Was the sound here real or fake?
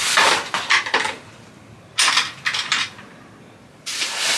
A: real